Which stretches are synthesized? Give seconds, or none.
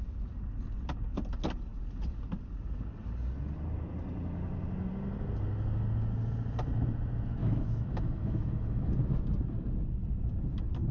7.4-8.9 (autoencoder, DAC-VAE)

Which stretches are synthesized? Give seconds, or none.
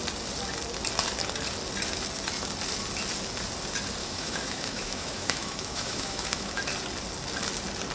4.0-6.6 (autoencoder, DAC-VAE)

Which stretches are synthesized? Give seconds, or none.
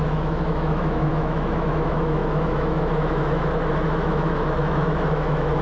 0.0-5.6 (autoencoder, DAC-VAE)